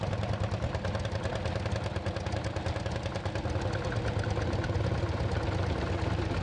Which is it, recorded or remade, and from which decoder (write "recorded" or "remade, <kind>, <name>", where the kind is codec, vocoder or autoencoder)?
recorded